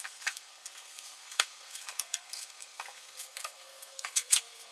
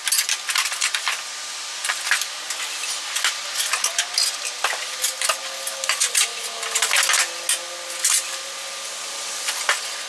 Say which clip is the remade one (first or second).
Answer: first